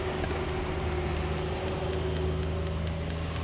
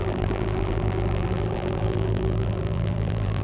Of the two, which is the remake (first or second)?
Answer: second